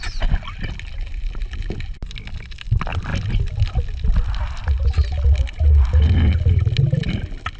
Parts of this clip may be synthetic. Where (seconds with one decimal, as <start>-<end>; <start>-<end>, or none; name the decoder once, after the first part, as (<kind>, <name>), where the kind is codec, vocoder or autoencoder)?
none